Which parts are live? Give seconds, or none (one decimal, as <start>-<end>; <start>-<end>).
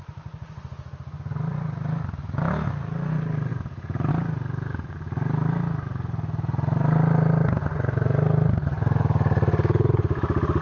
0.0-10.6